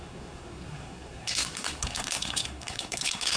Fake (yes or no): yes